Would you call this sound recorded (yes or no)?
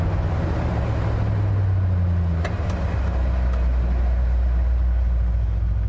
yes